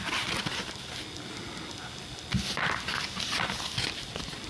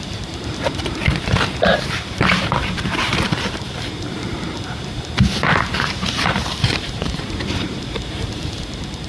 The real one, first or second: first